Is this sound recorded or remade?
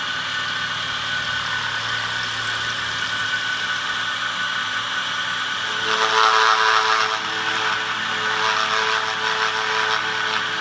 recorded